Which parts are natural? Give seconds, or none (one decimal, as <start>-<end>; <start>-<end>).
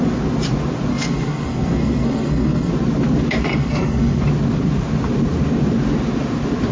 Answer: 0.0-0.9; 2.7-3.4; 4.2-6.7